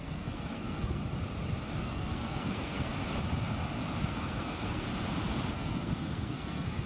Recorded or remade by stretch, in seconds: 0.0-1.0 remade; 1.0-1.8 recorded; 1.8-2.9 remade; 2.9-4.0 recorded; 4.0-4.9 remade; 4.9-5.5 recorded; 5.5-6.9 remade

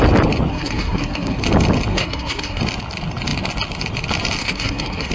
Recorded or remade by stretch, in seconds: 0.0-0.5 recorded; 0.5-1.4 remade; 1.4-1.9 recorded; 1.9-2.6 remade; 2.6-4.4 recorded; 4.4-5.1 remade